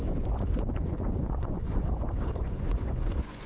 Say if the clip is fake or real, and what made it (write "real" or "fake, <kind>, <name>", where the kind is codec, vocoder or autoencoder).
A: fake, vocoder, Vocos